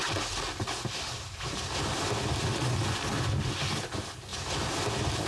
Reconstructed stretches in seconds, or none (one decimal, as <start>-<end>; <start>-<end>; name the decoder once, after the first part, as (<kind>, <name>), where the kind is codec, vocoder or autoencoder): none